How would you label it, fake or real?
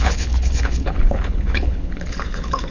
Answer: fake